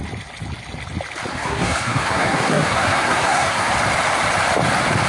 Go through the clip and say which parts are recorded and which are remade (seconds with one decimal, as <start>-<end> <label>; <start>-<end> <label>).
0.0-1.3 recorded; 1.3-3.7 remade; 3.7-5.1 recorded